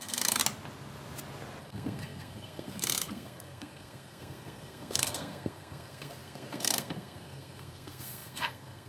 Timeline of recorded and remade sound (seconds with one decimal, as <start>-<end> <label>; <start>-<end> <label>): 0.0-0.4 remade; 0.4-1.6 recorded; 1.6-8.9 remade